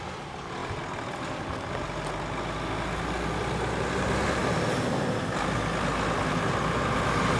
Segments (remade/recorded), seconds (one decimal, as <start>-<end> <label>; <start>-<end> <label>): 0.0-7.4 recorded